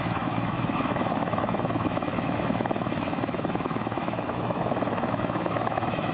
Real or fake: fake